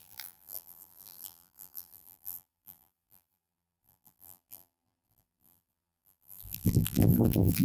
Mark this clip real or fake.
fake